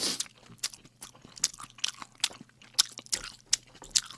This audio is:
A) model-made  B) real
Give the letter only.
B